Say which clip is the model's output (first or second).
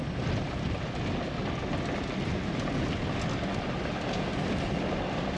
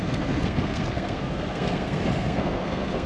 second